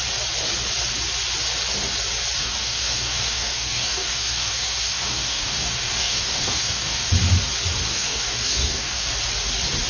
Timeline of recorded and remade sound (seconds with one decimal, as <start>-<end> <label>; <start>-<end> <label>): 0.0-2.4 recorded; 2.4-7.1 remade; 7.1-7.9 recorded; 7.9-9.1 remade; 9.1-9.9 recorded